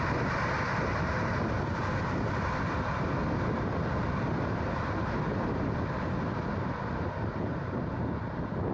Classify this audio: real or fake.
real